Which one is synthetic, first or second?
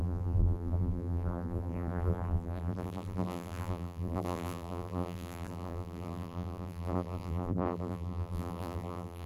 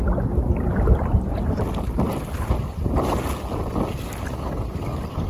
first